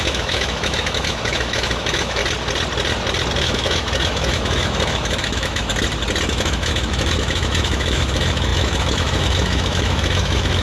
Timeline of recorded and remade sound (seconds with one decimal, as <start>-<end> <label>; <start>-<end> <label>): 0.0-2.2 remade; 2.2-3.4 recorded; 3.4-5.7 remade; 5.7-6.3 recorded; 6.3-10.6 remade